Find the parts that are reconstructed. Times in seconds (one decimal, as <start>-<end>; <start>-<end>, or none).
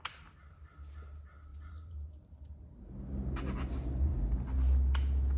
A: 1.5-2.5